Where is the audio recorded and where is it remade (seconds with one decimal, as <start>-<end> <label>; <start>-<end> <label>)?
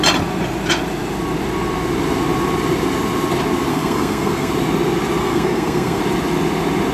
0.0-3.7 recorded; 3.7-4.5 remade; 4.5-5.2 recorded; 5.2-6.0 remade; 6.0-6.9 recorded